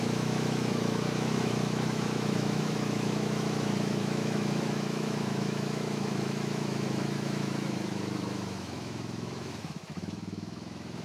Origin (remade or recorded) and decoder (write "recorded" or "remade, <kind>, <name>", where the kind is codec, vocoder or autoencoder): remade, autoencoder, DAC-VAE